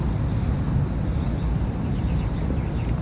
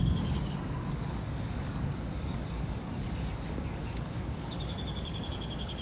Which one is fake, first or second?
second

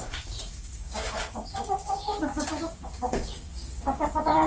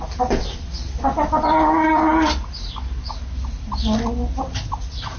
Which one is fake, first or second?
first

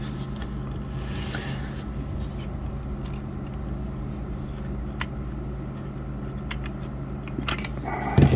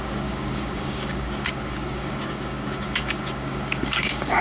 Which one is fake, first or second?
second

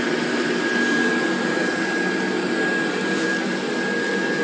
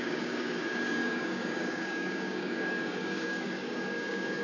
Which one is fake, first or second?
second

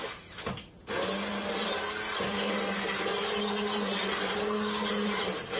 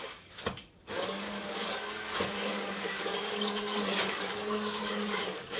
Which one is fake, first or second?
second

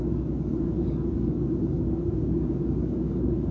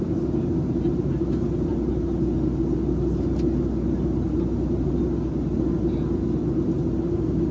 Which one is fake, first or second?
first